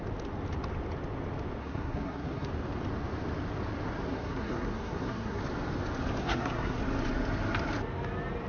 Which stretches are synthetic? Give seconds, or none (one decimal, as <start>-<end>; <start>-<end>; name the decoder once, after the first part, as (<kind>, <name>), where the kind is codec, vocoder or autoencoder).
1.6-2.5 (codec, SNAC); 4.1-5.4; 6.2-6.8